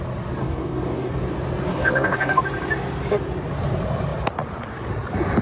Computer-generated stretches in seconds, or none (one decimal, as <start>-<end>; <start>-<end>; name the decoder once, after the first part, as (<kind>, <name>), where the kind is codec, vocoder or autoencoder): 0.4-1.1 (codec, DAC); 1.7-2.4